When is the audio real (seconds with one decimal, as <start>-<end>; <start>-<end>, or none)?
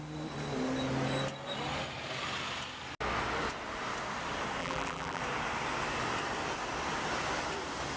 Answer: 0.0-4.6; 5.2-8.0